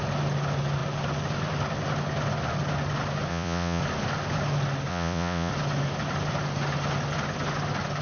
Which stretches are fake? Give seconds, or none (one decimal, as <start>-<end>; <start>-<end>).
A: 3.3-3.8; 4.9-5.5